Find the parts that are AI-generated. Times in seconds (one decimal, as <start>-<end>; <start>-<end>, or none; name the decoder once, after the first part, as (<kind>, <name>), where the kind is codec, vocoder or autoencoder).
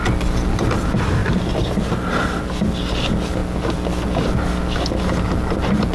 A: none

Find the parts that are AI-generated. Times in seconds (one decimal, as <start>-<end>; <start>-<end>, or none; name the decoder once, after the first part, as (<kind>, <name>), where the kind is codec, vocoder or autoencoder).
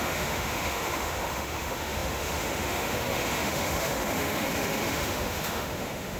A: 0.0-6.2 (autoencoder, DAC-VAE)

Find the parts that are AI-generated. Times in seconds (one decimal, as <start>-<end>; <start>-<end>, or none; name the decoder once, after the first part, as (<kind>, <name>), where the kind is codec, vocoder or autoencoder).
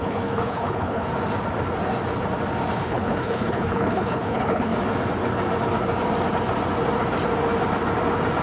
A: 0.0-1.1 (codec, HILCodec); 2.8-4.7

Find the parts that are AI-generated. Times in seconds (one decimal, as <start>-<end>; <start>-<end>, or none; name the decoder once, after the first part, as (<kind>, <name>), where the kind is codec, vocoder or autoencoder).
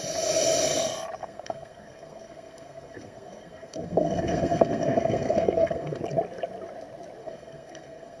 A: 1.2-6.0 (codec, SNAC); 7.2-8.2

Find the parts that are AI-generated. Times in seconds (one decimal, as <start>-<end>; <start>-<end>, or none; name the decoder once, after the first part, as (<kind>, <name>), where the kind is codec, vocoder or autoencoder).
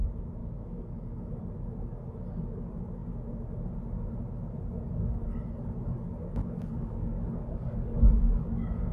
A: 0.4-1.3 (codec, DAC); 6.4-8.9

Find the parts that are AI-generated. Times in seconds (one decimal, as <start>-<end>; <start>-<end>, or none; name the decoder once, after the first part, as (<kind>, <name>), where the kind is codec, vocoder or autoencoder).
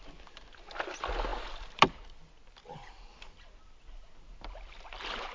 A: 1.3-1.9 (vocoder, BigVGAN v2)